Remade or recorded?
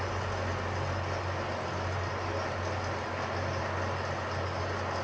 recorded